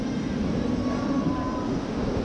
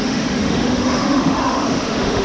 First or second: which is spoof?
second